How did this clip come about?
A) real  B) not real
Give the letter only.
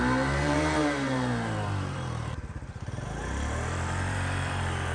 B